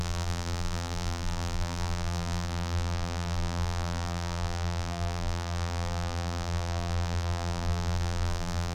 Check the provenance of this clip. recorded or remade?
remade